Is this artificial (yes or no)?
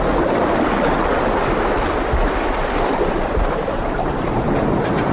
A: no